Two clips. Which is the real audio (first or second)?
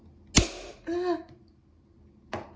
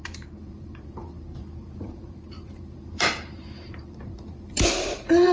first